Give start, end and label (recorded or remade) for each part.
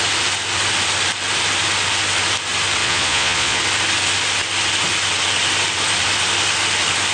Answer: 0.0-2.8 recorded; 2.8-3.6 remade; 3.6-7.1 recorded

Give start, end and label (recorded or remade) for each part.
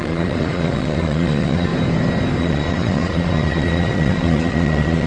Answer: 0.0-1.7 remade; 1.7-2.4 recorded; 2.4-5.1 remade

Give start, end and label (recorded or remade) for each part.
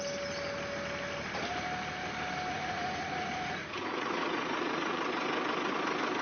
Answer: 0.0-2.5 recorded; 2.5-5.0 remade; 5.0-6.2 recorded